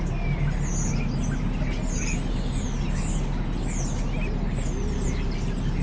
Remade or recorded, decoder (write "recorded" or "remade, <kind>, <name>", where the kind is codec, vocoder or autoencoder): recorded